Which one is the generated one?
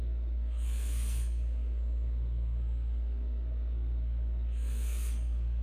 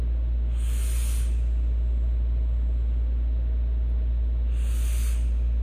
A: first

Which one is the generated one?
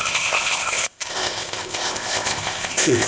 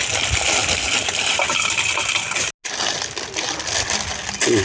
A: first